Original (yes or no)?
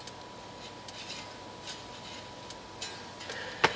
yes